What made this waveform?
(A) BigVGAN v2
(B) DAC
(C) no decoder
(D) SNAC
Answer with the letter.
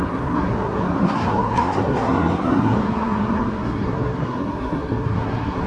D